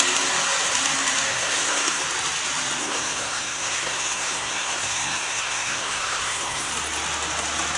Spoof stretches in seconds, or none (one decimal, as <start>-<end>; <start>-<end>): 1.3-2.0; 2.8-6.7